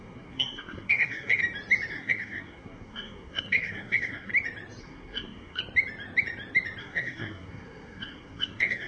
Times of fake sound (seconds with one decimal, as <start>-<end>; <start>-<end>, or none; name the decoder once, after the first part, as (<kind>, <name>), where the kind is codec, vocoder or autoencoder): 0.0-1.4 (codec, SNAC); 1.9-4.3; 4.8-5.6; 6.8-8.9